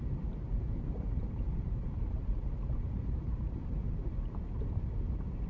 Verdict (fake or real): fake